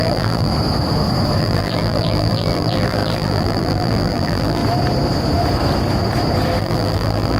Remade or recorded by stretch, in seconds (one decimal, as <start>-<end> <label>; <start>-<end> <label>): 0.0-0.5 remade; 0.5-1.4 recorded; 1.4-4.6 remade; 4.6-6.6 recorded; 6.6-7.4 remade